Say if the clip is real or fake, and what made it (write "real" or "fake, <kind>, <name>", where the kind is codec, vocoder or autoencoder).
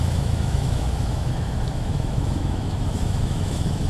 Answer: fake, autoencoder, DAC-VAE